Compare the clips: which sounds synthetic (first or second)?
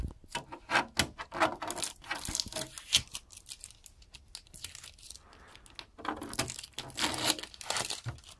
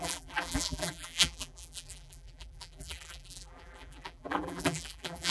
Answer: second